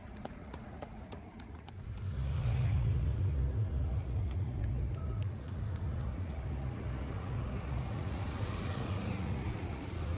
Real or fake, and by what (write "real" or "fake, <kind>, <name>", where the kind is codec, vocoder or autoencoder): fake, vocoder, Vocos